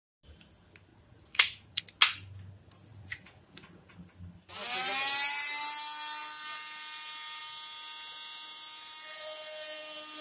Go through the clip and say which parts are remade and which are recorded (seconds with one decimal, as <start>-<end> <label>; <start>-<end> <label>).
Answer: 0.0-0.9 recorded; 0.9-1.8 remade; 1.8-2.9 recorded; 2.9-3.9 remade; 3.9-10.2 recorded